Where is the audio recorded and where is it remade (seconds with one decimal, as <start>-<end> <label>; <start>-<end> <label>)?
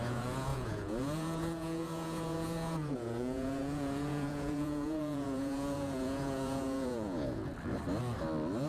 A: 0.0-7.5 remade; 7.5-8.7 recorded